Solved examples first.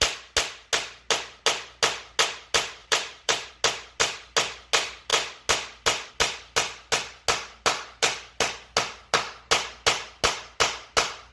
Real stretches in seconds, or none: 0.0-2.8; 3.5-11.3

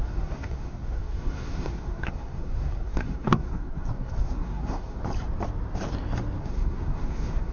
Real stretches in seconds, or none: 5.0-6.4

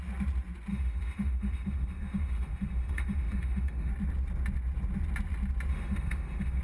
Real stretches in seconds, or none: 0.0-0.7; 3.9-5.7